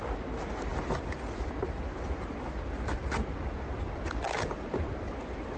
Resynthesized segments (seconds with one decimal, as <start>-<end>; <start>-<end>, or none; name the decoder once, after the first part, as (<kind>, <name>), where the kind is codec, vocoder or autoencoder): none